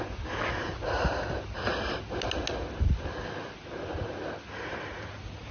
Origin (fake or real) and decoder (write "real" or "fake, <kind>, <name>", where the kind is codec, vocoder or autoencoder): real